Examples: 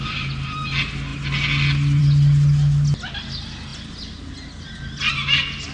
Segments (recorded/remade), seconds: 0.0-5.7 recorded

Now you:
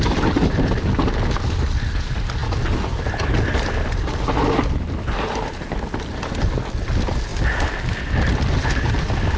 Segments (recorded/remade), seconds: 0.0-9.4 recorded

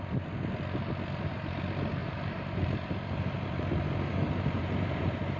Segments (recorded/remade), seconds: 0.0-2.0 recorded; 2.0-5.4 remade

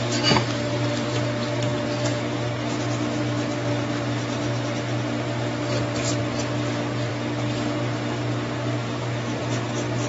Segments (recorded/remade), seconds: 0.0-1.7 recorded; 1.7-6.2 remade; 6.2-10.1 recorded